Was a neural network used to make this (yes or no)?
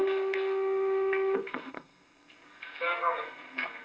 yes